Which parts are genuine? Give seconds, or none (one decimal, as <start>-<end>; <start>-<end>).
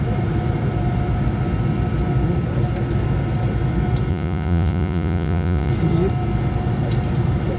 0.0-4.1; 5.7-7.6